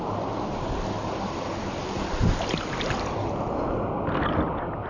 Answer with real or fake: real